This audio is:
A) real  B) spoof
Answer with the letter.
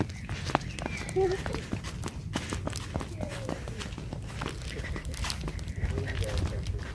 A